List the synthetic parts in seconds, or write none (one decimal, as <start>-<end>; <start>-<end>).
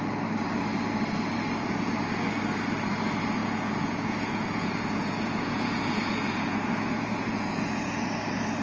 3.4-8.1